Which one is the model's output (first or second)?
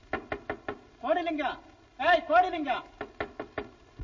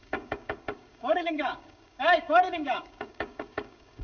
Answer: second